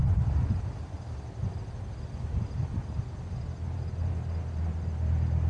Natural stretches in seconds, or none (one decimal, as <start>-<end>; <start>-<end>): 0.0-5.5